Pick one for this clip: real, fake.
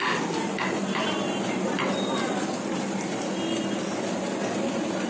real